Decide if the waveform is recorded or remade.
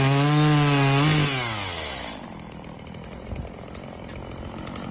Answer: recorded